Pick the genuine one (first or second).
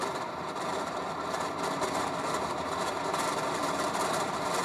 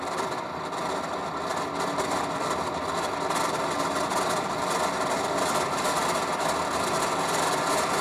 second